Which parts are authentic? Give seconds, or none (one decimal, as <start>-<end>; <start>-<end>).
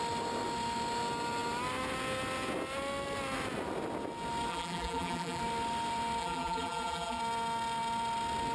0.0-4.5; 5.4-6.2; 7.2-8.5